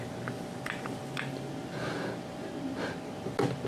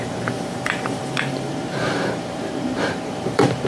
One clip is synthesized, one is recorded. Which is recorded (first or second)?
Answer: first